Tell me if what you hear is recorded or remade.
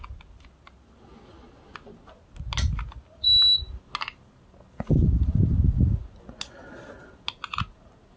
recorded